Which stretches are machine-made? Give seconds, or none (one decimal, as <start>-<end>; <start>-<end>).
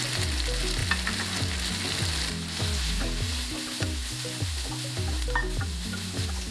none